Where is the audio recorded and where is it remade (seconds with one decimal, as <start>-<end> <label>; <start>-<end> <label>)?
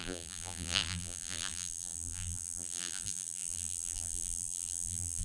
0.0-5.2 remade